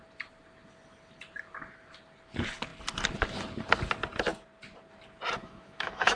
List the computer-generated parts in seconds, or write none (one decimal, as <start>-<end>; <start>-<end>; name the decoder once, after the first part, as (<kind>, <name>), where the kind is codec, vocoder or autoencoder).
5.4-6.2 (autoencoder, DAC-VAE)